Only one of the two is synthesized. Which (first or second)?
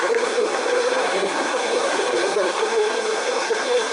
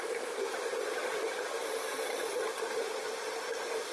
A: first